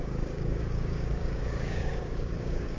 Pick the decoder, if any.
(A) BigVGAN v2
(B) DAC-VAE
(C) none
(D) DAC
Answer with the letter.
D